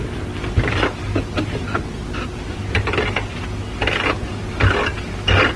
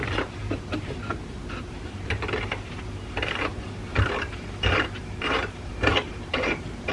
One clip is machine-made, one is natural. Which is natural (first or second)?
first